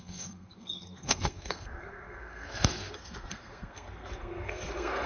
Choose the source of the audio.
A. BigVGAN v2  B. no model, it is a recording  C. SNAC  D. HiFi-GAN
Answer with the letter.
C